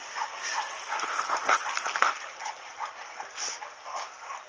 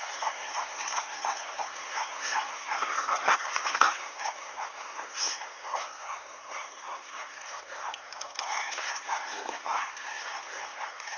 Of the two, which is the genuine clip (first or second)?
first